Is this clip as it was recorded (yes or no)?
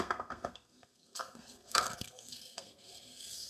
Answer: no